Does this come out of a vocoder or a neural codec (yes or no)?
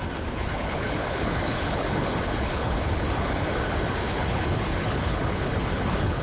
yes